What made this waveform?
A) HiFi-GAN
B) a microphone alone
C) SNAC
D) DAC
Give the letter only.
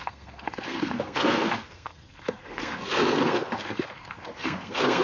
C